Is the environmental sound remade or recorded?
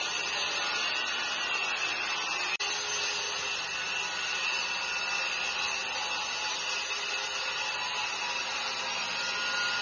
recorded